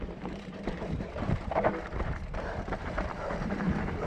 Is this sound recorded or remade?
remade